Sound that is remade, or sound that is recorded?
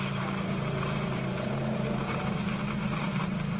remade